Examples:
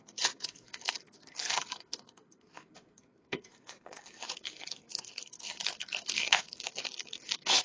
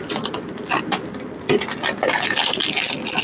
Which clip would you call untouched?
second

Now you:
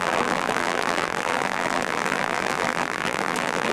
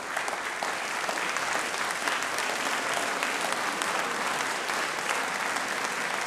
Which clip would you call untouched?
second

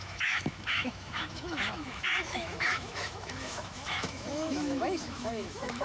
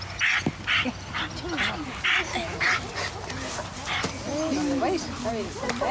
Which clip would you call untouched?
second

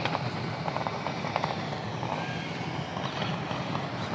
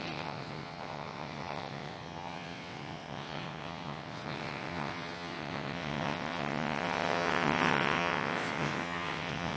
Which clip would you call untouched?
first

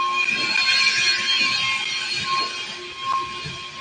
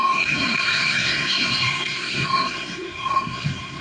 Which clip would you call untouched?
first